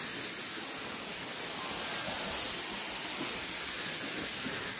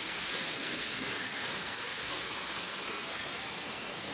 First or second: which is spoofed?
second